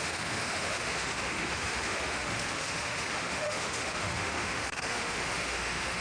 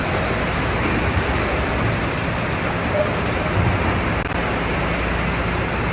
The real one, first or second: second